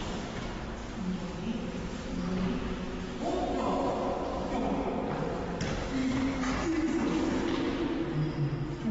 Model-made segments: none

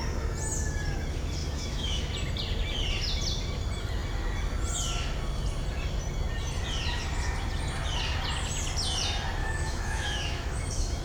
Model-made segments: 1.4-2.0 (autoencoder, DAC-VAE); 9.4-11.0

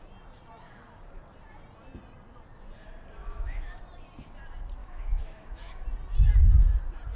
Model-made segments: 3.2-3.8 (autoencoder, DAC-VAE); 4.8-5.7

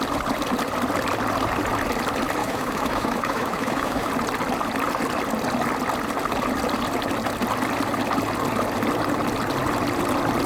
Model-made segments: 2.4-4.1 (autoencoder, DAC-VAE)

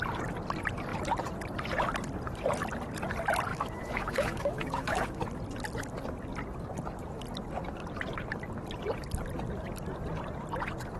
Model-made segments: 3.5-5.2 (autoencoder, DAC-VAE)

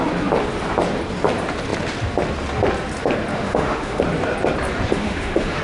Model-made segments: 3.3-4.0 (autoencoder, DAC-VAE); 4.9-5.6

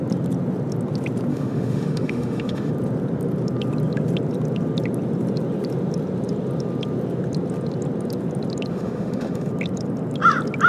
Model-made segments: 1.3-2.7 (autoencoder, DAC-VAE); 8.7-9.5

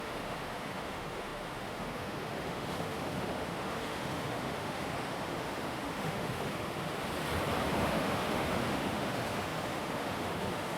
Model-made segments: 0.0-7.0 (autoencoder, DAC-VAE); 7.7-10.8